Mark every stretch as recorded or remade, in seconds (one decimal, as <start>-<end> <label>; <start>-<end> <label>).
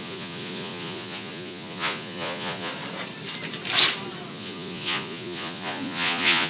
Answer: 0.0-2.7 remade; 2.7-4.3 recorded; 4.3-6.5 remade